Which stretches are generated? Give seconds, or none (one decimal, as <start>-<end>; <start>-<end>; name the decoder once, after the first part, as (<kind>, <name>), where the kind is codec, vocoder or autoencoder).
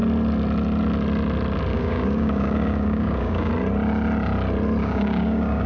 1.7-3.5 (codec, DAC); 4.8-5.7